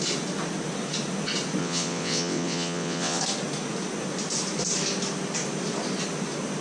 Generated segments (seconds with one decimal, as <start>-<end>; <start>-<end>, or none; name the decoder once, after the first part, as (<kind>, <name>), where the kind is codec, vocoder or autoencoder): 1.6-3.2 (vocoder, WaveNeXt)